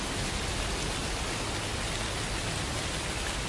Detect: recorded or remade recorded